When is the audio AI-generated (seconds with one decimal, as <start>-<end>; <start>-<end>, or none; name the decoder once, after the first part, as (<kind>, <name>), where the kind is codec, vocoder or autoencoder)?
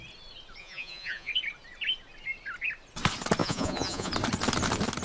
0.6-1.3 (vocoder, Vocos); 3.4-4.1